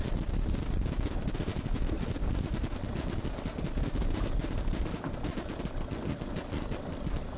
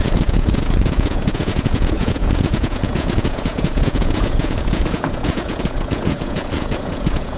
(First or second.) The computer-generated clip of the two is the second